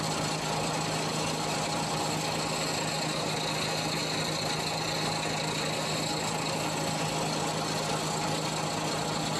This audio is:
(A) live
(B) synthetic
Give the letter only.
A